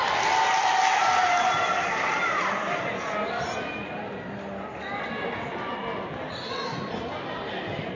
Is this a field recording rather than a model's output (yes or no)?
yes